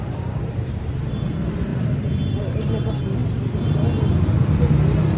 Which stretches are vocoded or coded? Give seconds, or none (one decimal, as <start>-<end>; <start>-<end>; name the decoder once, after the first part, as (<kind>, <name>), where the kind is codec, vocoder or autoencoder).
0.0-1.7 (vocoder, BigVGAN v2); 2.6-3.2; 4.1-5.2